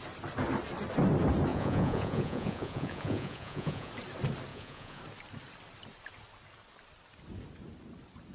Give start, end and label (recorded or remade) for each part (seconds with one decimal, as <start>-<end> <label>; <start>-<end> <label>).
0.0-1.5 recorded; 1.5-3.9 remade; 3.9-4.5 recorded; 4.5-5.0 remade; 5.0-8.3 recorded